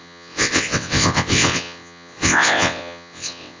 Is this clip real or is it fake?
fake